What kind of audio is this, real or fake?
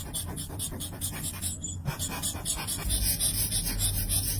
real